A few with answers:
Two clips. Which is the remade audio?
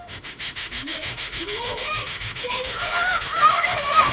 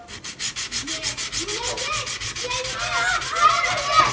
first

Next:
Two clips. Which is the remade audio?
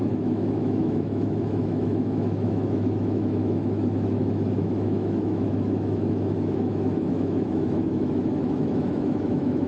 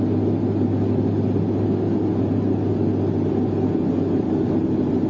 first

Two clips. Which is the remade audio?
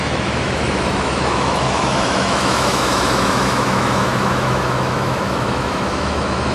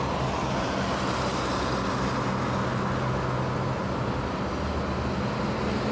first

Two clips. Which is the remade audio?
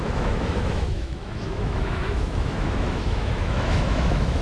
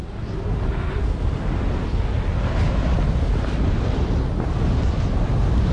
first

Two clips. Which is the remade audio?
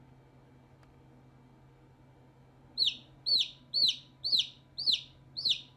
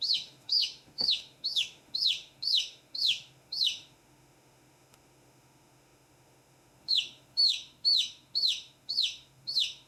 second